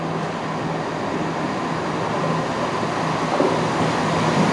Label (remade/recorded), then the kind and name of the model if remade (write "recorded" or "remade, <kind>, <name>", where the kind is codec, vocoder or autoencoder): recorded